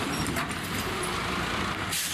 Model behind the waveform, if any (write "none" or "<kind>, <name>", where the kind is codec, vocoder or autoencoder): vocoder, BigVGAN v2